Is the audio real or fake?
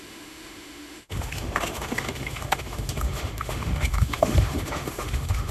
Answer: fake